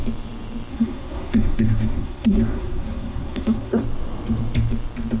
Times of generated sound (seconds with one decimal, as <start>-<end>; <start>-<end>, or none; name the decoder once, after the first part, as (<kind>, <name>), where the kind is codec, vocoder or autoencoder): 0.7-3.8 (codec, SNAC)